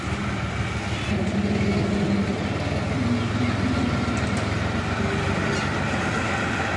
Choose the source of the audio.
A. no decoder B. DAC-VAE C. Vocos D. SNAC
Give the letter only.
A